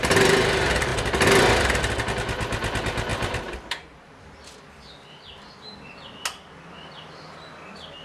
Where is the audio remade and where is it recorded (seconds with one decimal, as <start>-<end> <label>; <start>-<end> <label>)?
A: 0.0-3.1 recorded; 3.1-4.2 remade; 4.2-8.0 recorded